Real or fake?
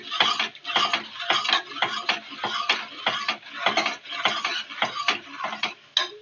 real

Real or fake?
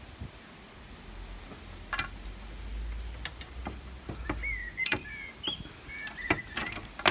real